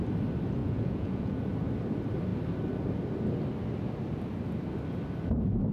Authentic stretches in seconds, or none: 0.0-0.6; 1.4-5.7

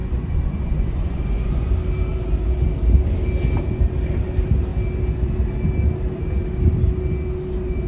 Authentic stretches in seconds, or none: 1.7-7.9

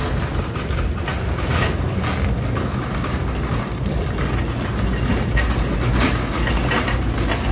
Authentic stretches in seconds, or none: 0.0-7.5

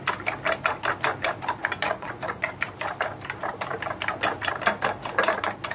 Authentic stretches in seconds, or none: 0.0-1.6; 2.5-5.7

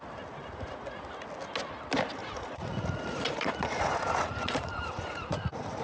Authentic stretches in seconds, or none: 0.0-0.4; 1.0-2.2

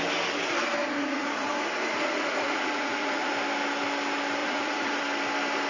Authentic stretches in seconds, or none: 0.0-0.8; 3.3-4.4; 5.0-5.7